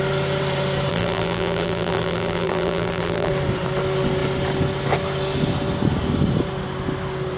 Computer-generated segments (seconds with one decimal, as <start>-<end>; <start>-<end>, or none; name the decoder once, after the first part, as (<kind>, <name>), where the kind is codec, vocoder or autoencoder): 0.9-3.3 (vocoder, BigVGAN v2)